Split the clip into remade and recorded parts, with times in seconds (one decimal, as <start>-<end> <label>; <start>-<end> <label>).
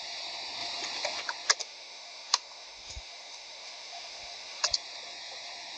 0.0-1.6 recorded; 1.6-4.6 remade; 4.6-5.8 recorded